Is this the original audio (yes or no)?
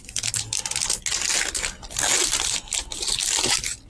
yes